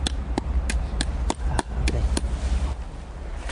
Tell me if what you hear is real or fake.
real